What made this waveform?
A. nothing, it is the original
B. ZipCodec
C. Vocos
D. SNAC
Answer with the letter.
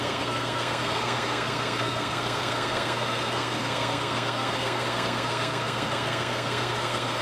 D